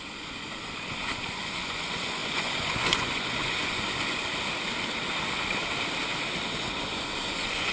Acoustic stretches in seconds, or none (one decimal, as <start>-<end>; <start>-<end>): 4.3-6.6